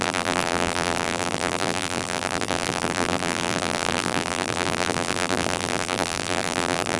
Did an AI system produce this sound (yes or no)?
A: yes